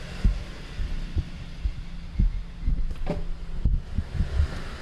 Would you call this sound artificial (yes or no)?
no